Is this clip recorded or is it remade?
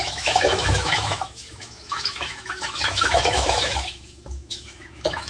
remade